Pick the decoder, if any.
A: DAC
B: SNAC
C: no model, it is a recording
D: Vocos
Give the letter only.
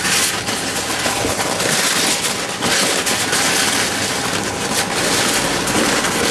C